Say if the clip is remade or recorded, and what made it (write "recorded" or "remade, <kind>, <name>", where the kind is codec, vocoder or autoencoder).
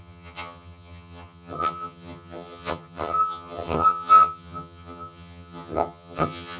remade, vocoder, HiFi-GAN